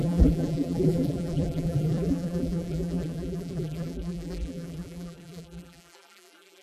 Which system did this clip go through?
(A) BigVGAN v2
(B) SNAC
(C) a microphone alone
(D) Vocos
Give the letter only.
A